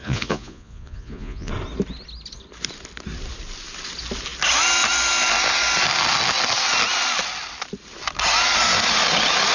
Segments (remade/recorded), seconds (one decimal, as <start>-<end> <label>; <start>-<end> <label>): 0.0-1.5 remade; 1.5-9.5 recorded